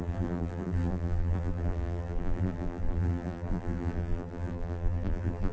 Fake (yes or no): yes